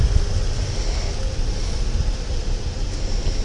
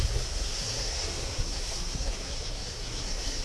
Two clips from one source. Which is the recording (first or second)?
first